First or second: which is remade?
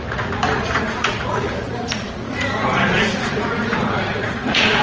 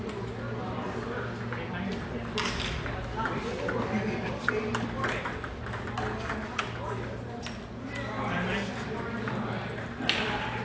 first